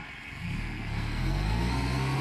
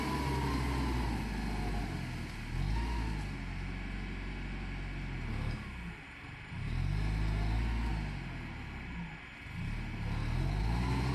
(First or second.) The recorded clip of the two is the second